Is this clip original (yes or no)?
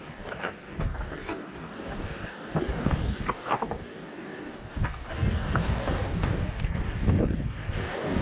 no